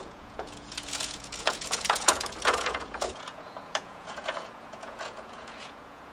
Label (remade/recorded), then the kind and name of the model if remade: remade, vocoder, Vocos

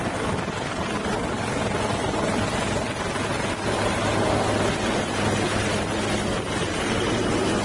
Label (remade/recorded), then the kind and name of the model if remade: recorded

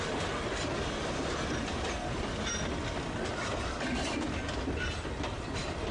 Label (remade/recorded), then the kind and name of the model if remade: recorded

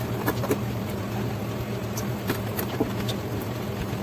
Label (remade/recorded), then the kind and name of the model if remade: remade, vocoder, BigVGAN v2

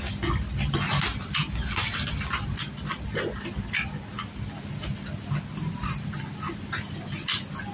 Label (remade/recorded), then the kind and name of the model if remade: recorded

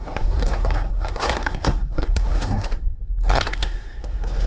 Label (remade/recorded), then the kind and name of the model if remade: remade, codec, SNAC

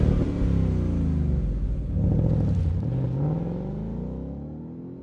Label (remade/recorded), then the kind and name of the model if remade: recorded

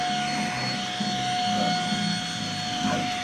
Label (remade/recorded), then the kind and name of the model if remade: recorded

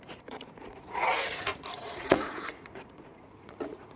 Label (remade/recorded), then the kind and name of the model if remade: remade, vocoder, Vocos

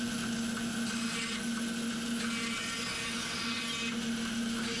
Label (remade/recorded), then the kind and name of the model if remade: recorded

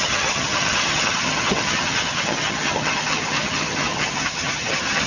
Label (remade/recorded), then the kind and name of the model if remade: remade, vocoder, HiFi-GAN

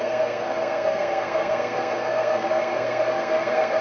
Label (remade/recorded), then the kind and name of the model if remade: remade, codec, SNAC